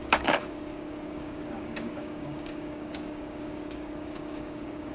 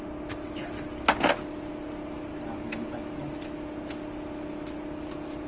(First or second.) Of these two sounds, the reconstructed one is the first